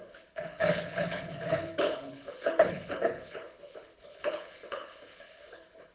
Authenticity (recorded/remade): remade